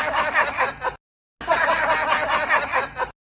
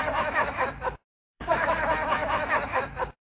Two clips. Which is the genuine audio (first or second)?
first